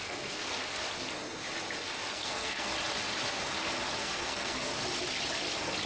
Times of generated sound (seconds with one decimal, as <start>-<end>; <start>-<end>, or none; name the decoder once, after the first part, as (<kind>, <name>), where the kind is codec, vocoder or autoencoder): 0.0-0.6 (codec, SNAC); 2.1-2.7; 4.0-4.7